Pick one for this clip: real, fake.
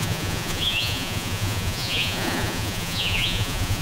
fake